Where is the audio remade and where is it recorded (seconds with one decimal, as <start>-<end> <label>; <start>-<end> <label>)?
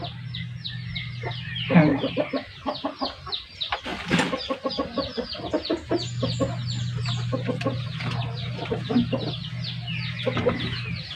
0.0-3.9 recorded; 3.9-4.7 remade; 4.7-6.6 recorded; 6.6-8.2 remade; 8.2-11.2 recorded